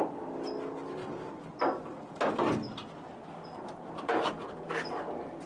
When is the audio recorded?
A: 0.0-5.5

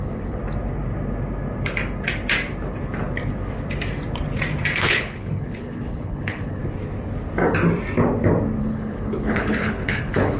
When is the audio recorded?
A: 0.4-4.8; 6.6-8.6

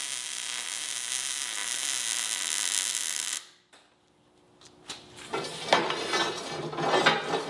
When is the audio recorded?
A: 0.0-7.5

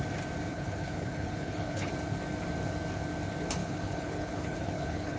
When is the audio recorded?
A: 0.0-0.5; 1.9-3.6

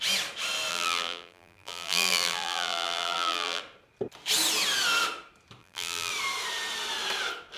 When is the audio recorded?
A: 0.0-0.7; 3.6-5.6; 6.1-7.6